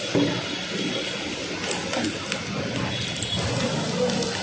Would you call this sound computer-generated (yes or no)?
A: no